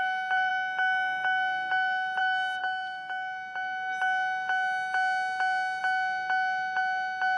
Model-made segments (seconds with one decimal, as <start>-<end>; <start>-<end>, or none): none